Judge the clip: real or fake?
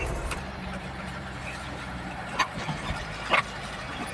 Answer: fake